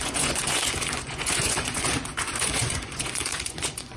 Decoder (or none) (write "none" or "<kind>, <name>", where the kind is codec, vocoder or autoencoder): vocoder, Vocos